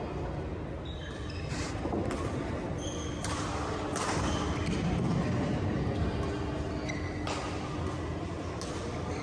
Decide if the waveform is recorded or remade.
recorded